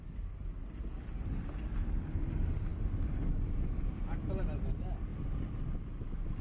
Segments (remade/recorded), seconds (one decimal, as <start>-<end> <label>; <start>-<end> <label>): 0.0-6.4 recorded